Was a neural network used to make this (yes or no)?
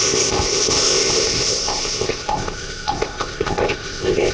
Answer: yes